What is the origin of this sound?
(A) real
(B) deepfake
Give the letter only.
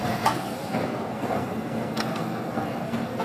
B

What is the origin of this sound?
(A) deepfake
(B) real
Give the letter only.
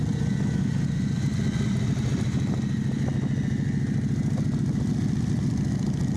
B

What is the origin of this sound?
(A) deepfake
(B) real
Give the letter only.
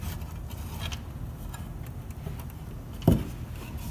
B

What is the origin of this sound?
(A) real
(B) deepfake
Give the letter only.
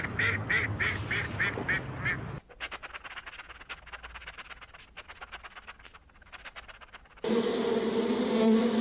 A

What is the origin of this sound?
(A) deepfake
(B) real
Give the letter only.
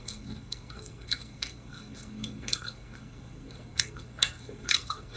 A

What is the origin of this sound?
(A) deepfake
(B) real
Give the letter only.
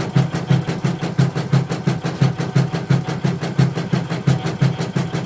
B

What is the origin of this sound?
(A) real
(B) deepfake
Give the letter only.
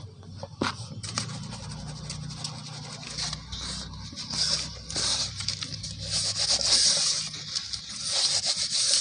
A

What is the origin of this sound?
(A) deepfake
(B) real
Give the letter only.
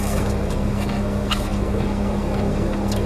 A